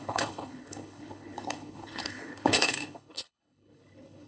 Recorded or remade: remade